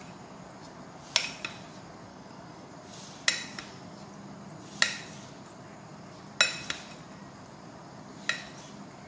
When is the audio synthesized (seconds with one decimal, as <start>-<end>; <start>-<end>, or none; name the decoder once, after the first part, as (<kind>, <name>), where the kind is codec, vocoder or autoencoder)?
2.1-2.7 (codec, DAC)